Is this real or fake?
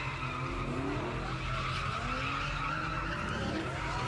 real